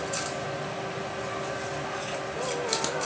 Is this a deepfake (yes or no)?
no